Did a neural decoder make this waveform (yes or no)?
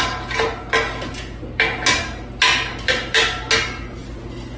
no